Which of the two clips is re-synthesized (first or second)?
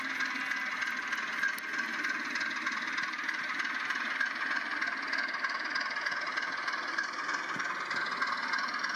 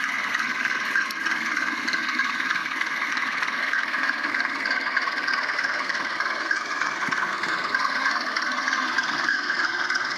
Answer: second